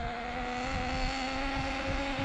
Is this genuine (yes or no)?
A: yes